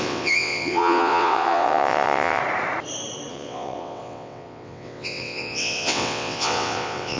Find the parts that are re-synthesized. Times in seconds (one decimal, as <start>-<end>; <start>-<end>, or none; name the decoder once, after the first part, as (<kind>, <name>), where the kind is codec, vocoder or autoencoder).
0.0-2.4 (vocoder, WaveNeXt); 3.3-7.2